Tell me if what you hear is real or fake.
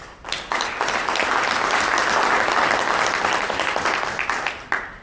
fake